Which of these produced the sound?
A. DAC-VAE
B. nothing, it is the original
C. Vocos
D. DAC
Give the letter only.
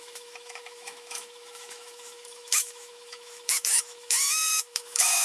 A